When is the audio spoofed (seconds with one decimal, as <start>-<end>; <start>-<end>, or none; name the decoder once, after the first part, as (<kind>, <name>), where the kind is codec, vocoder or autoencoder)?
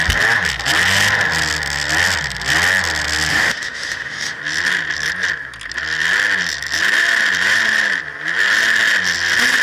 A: 3.3-4.4 (autoencoder, DAC-VAE)